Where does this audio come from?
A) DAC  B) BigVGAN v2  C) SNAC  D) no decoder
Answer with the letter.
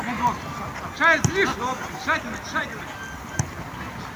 D